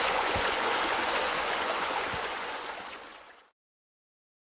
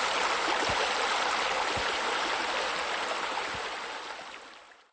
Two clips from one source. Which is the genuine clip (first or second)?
second